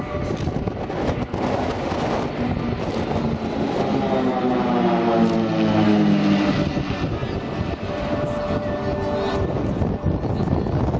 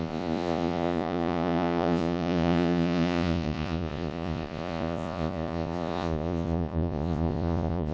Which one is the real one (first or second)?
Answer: first